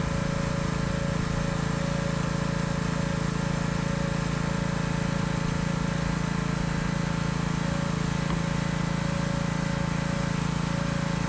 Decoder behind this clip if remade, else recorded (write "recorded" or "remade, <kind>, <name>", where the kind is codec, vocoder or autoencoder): recorded